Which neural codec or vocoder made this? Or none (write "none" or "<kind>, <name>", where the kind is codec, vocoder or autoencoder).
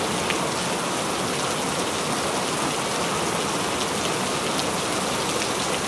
none